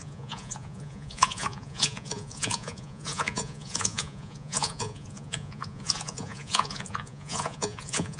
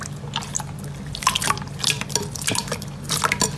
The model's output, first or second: first